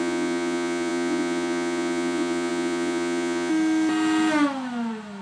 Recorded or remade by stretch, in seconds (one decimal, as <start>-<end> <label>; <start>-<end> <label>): 0.0-3.5 remade; 3.5-5.2 recorded